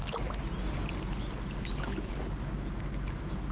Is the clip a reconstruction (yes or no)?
no